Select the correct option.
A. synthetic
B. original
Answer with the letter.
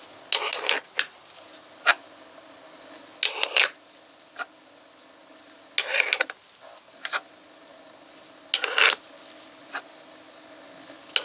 B